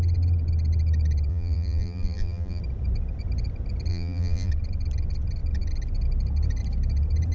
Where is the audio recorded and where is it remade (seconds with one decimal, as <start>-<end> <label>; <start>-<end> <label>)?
0.0-1.3 recorded; 1.3-2.6 remade; 2.6-3.9 recorded; 3.9-4.5 remade; 4.5-7.3 recorded